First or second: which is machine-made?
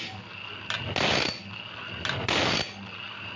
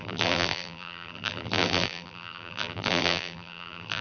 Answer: second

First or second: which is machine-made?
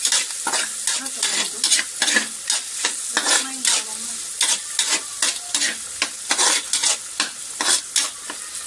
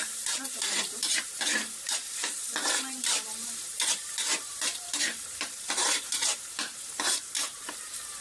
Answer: second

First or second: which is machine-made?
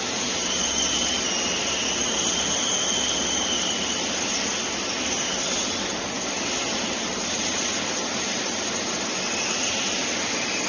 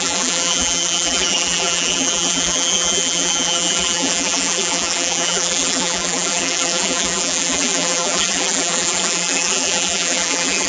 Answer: second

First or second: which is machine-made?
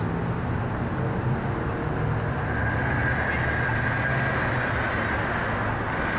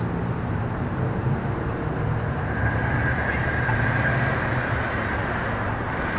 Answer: second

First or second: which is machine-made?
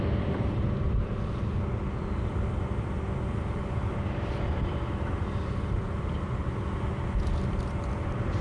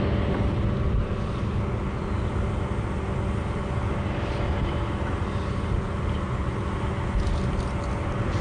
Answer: first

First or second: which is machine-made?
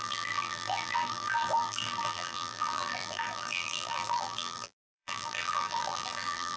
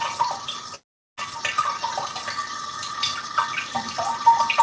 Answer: first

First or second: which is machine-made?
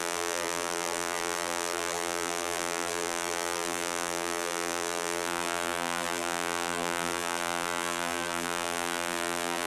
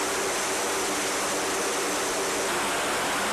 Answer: first